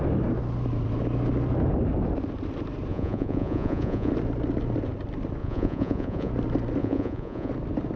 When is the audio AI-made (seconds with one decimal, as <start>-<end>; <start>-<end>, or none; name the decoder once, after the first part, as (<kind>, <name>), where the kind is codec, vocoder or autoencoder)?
2.9-4.1 (vocoder, Vocos); 5.4-6.3; 6.8-7.5

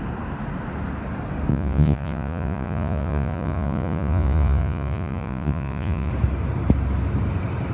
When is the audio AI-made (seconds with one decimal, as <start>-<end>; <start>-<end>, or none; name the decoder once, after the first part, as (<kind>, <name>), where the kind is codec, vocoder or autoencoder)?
1.5-6.1 (vocoder, Vocos)

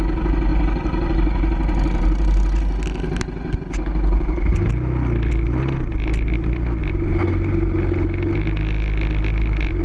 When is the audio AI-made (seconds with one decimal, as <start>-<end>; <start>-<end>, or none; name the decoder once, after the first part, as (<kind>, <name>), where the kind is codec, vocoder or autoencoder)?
none

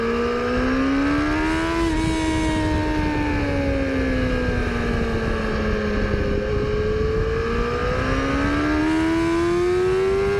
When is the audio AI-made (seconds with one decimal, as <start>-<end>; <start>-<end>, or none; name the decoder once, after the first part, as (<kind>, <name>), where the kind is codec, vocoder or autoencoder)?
none